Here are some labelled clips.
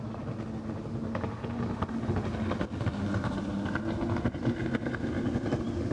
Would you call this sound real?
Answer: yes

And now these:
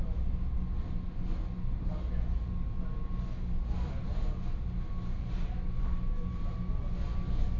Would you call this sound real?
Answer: yes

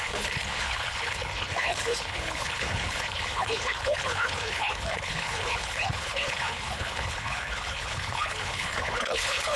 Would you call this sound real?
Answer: no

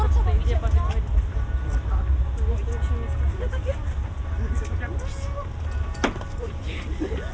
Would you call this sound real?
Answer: yes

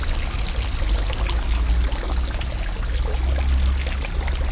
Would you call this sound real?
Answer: yes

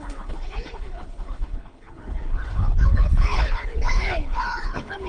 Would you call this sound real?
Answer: no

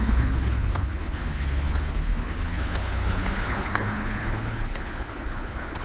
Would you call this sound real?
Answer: no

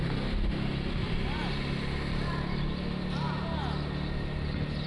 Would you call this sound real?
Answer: yes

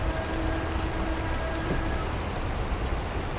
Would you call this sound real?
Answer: yes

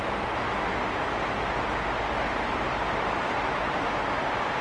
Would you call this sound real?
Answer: yes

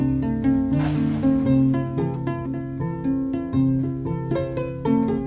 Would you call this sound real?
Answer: yes